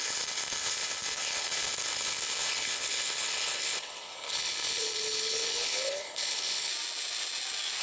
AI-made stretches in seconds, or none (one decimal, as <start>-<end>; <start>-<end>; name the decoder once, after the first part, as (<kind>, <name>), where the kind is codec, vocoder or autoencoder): 0.0-6.7 (codec, HILCodec)